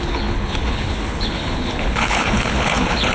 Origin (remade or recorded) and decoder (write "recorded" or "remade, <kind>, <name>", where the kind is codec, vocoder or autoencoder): remade, codec, HILCodec